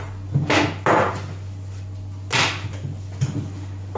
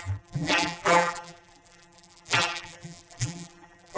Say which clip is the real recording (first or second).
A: first